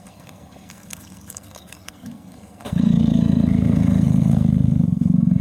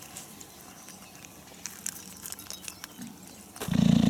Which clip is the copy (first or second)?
first